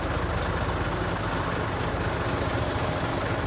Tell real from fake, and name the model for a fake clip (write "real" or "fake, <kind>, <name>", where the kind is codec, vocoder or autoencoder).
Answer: real